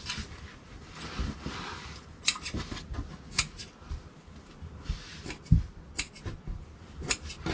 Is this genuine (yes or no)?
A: yes